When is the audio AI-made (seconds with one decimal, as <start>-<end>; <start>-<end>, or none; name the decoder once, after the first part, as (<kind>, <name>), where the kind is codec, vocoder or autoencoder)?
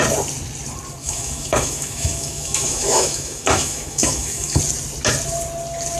1.0-4.6 (autoencoder, DAC-VAE)